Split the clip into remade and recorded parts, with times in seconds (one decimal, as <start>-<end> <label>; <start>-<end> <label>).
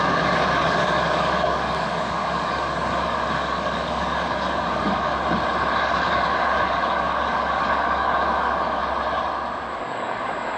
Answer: 0.0-5.1 remade; 5.1-5.7 recorded; 5.7-8.8 remade; 8.8-9.8 recorded; 9.8-10.6 remade